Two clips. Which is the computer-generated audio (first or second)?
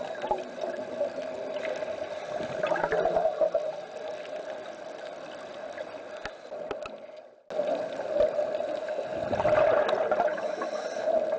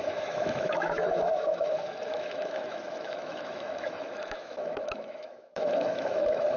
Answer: second